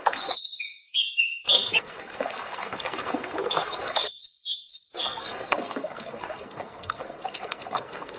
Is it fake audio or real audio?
fake